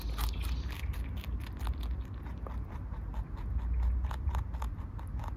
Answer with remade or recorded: recorded